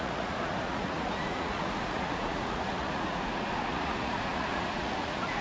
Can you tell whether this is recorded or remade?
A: remade